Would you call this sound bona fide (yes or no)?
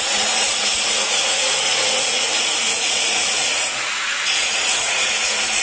no